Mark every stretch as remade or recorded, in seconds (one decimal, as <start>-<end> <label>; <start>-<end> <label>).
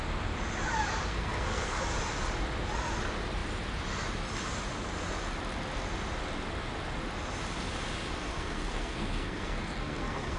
0.0-1.1 recorded; 1.1-1.8 remade; 1.8-8.3 recorded; 8.3-10.4 remade